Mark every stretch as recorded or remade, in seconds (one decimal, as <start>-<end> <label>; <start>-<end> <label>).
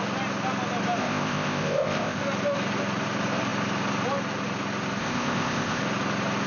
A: 0.0-1.0 recorded; 1.0-2.2 remade; 2.2-5.0 recorded; 5.0-5.8 remade; 5.8-6.5 recorded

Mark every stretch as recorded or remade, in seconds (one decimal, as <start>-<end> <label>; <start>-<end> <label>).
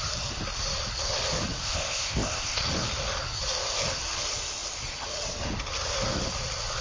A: 0.0-1.6 recorded; 1.6-2.6 remade; 2.6-6.8 recorded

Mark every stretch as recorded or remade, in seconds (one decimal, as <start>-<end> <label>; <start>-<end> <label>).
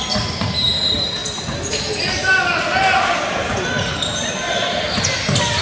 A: 0.0-5.6 recorded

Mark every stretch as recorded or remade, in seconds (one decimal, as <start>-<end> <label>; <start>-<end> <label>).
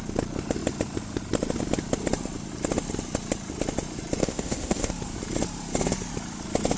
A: 0.0-4.2 recorded; 4.2-4.9 remade; 4.9-6.8 recorded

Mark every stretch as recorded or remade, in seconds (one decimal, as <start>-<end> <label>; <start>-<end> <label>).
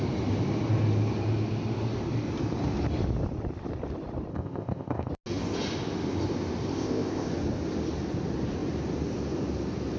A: 0.0-4.3 recorded; 4.3-5.1 remade; 5.1-6.7 recorded; 6.7-7.3 remade; 7.3-10.0 recorded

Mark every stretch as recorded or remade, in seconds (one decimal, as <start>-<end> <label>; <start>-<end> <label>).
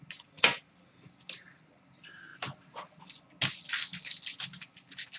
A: 0.0-5.2 recorded